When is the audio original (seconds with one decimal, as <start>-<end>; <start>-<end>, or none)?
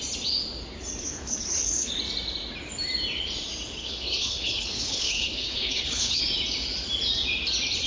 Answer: 0.0-1.0; 1.9-3.8; 6.2-7.9